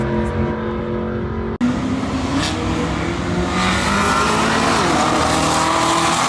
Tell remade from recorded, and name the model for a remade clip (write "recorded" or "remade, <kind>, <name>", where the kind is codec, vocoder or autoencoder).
recorded